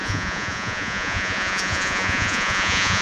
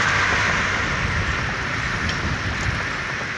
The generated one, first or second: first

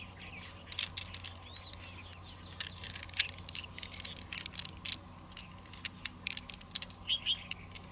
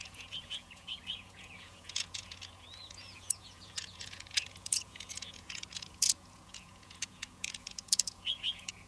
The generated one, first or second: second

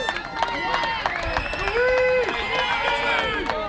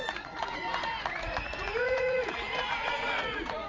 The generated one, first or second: second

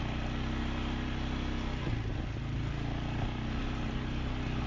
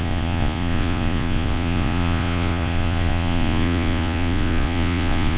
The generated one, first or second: second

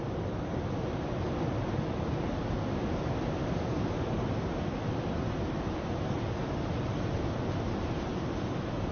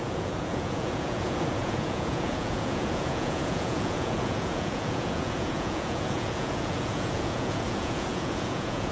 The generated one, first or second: second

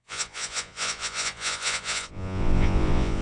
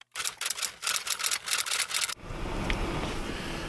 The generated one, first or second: first